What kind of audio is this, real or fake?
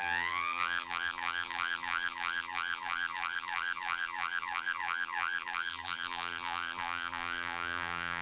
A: fake